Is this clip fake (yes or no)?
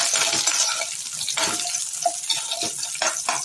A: no